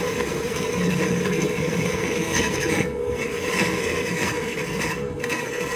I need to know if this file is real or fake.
fake